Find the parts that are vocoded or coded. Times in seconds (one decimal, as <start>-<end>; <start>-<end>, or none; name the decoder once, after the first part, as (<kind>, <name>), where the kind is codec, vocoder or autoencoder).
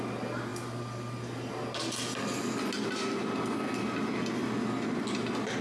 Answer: none